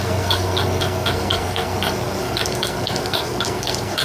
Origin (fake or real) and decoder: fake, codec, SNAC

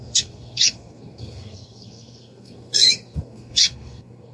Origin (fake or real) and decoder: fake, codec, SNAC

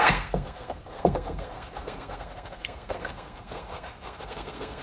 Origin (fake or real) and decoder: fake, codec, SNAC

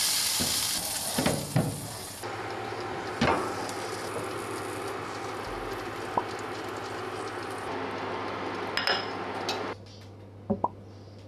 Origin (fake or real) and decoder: real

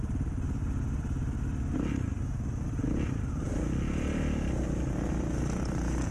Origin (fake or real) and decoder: real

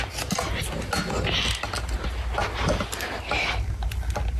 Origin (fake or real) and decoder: real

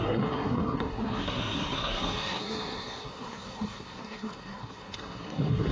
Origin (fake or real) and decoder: fake, codec, SNAC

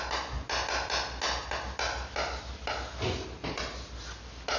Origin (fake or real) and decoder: real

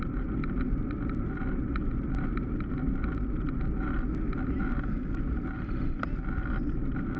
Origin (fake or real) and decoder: real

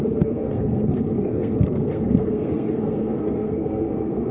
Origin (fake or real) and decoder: fake, codec, SNAC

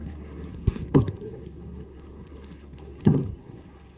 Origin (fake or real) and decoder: fake, codec, SNAC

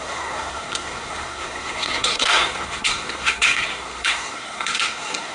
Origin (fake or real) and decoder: fake, codec, SNAC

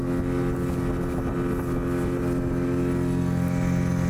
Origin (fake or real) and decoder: real